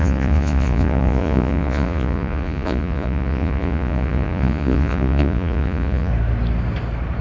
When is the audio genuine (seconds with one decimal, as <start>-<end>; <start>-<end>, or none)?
6.1-7.2